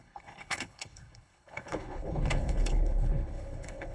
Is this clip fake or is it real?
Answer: fake